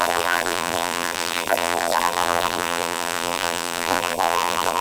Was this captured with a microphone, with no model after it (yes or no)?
no